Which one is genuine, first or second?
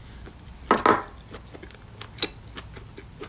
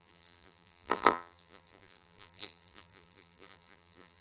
first